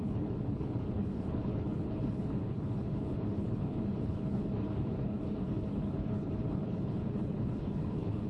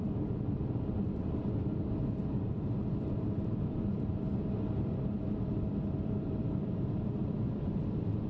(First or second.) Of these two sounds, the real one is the second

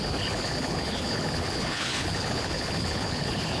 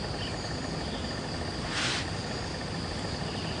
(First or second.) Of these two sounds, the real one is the second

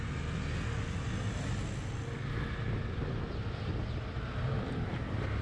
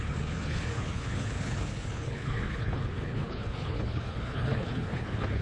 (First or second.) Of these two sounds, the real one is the first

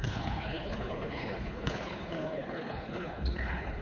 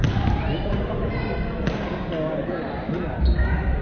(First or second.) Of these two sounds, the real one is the second